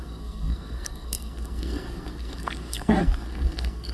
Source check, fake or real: fake